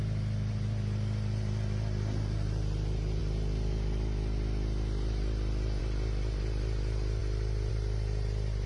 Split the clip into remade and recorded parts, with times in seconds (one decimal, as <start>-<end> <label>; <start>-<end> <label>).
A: 0.0-8.7 recorded